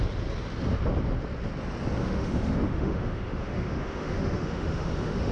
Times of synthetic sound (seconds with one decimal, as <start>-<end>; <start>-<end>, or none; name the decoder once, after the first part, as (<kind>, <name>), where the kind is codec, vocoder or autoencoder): 2.0-5.3 (autoencoder, DAC-VAE)